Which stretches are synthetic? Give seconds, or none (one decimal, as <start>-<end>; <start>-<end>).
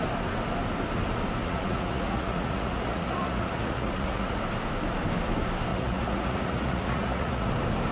1.4-4.4; 5.7-7.5